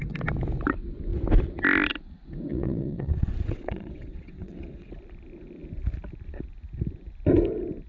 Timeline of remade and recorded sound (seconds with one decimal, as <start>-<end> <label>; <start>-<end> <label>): 0.0-2.5 recorded; 2.5-4.9 remade; 4.9-7.9 recorded